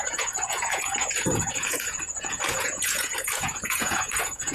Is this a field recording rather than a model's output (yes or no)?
no